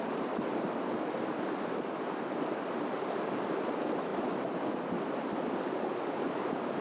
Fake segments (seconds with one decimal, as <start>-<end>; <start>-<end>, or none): none